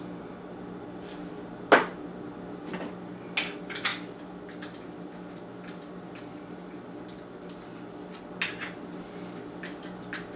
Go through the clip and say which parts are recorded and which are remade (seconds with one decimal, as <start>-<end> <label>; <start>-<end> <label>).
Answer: 0.0-10.4 recorded